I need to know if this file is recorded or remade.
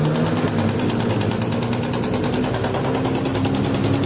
recorded